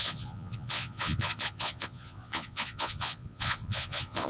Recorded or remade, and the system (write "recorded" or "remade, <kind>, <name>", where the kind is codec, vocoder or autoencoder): remade, vocoder, Vocos